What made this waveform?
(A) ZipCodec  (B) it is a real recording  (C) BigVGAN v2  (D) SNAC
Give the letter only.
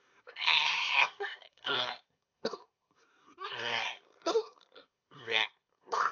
D